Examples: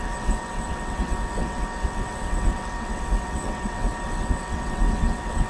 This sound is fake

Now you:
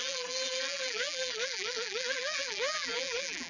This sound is fake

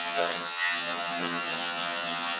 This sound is fake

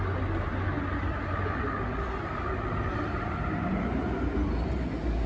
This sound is real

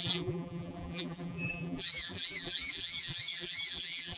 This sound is fake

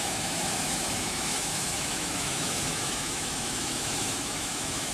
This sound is fake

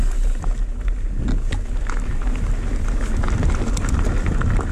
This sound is real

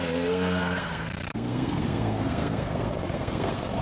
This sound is fake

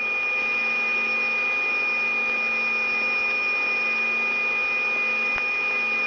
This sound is real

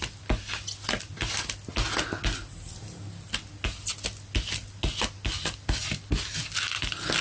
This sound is real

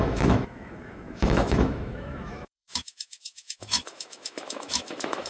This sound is fake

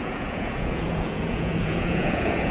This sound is fake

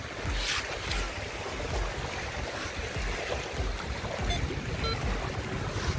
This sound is real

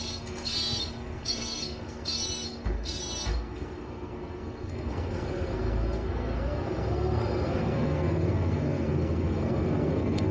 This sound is fake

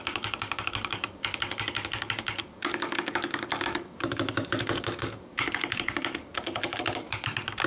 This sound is fake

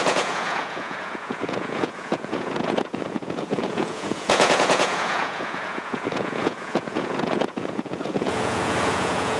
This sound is fake